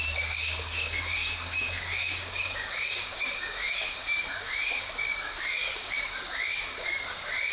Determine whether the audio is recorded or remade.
remade